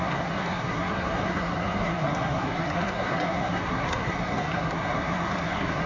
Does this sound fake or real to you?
fake